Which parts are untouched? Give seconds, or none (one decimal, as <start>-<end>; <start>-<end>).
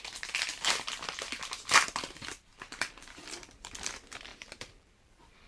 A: 0.0-2.5; 3.7-4.3; 5.1-5.5